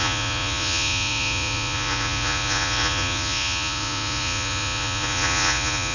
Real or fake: fake